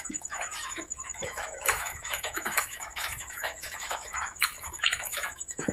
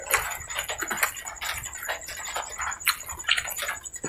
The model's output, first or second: first